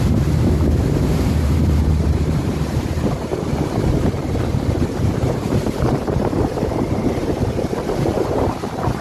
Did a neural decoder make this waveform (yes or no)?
yes